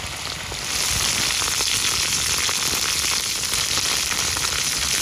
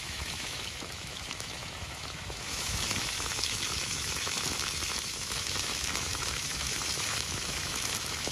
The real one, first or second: first